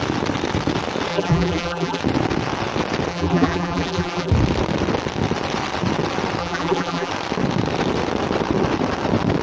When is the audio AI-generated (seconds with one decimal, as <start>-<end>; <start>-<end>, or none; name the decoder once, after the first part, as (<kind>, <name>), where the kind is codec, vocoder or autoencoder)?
1.1-2.0 (vocoder, BigVGAN v2); 3.1-4.3; 6.4-7.1